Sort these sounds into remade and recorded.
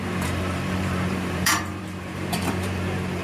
remade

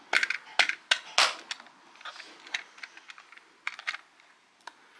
recorded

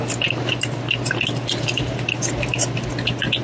recorded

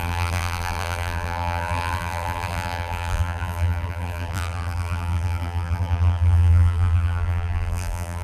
remade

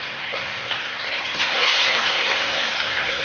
remade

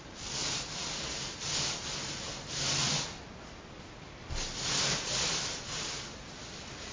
recorded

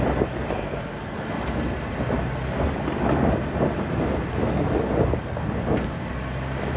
recorded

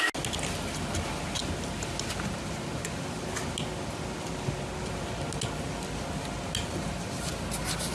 recorded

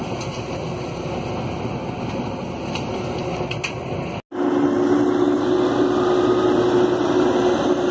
recorded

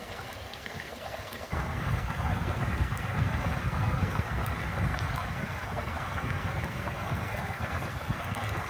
remade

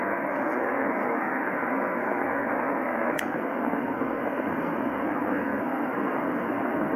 remade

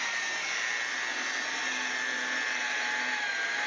recorded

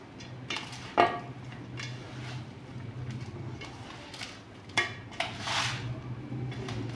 recorded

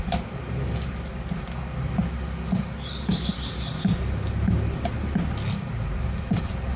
recorded